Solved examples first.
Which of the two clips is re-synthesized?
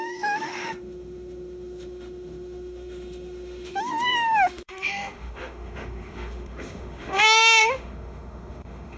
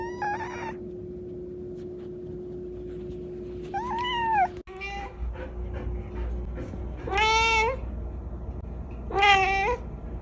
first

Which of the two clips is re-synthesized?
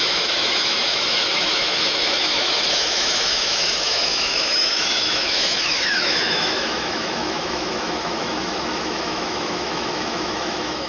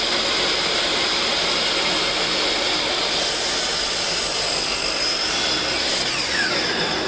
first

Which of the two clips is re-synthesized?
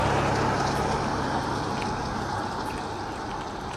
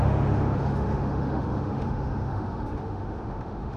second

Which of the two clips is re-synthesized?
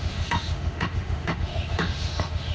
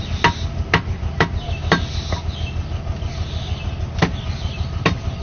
first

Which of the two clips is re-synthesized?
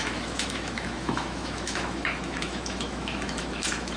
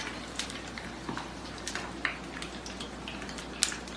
first